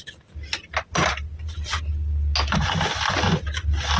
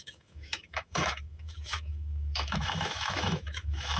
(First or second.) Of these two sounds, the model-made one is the second